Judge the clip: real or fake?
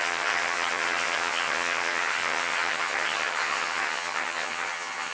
fake